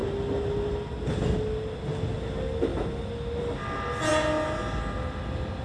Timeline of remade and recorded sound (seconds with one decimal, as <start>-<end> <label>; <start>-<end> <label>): 0.0-5.6 recorded